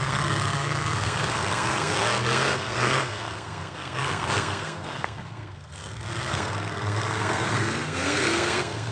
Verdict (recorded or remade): remade